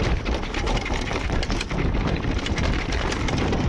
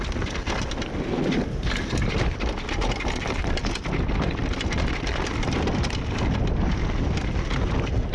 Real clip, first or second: second